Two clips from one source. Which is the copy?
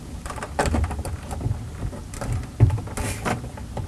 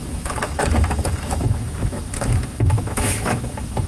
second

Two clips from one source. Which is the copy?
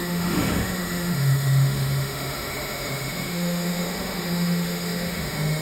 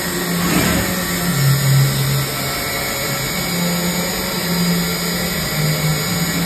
first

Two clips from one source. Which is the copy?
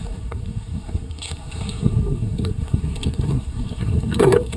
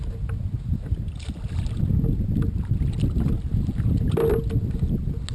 first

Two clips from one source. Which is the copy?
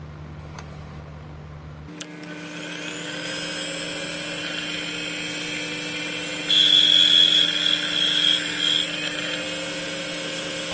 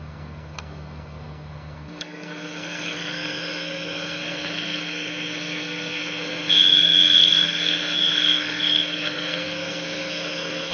second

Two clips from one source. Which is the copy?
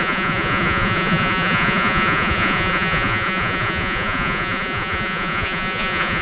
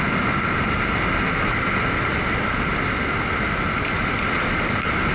first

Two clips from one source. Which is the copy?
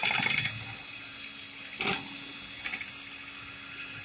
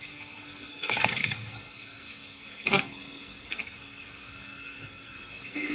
second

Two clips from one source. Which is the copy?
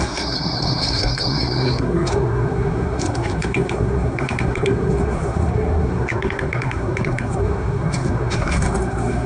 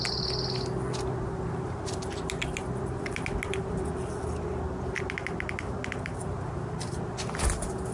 first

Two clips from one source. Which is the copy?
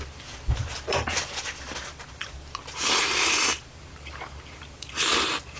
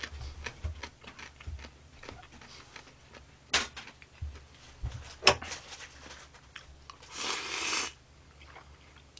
first